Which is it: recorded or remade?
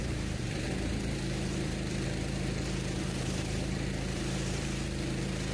remade